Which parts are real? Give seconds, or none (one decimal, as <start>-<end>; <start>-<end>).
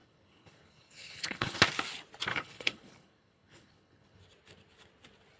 1.6-2.3; 4.2-5.4